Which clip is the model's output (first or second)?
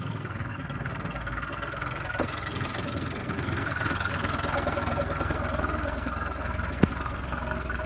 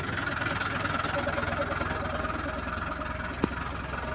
first